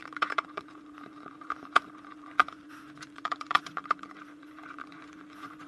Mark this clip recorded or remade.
remade